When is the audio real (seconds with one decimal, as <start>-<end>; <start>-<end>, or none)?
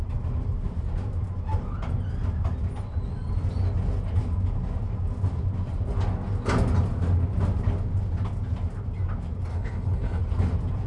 0.0-9.5; 10.2-10.9